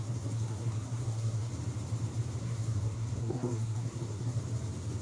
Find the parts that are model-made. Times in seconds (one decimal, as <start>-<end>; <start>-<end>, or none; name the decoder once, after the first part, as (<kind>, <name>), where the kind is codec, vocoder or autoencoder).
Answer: 0.0-1.5 (codec, SNAC); 2.4-4.4